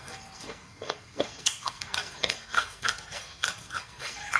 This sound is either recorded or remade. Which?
remade